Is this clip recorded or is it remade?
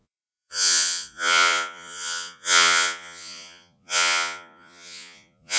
remade